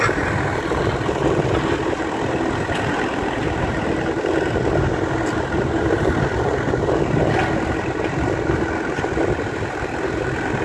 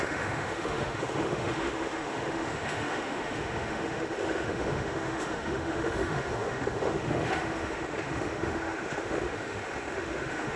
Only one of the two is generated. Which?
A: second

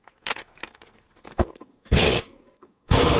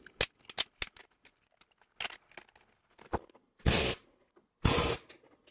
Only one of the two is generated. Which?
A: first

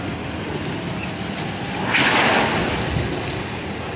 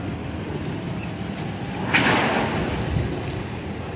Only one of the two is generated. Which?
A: second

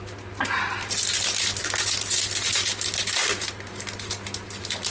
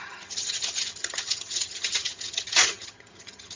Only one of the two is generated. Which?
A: second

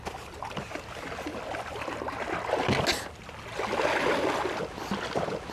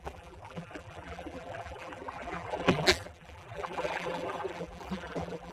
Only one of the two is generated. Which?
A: second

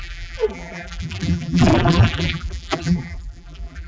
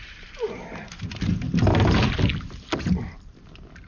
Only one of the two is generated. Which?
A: first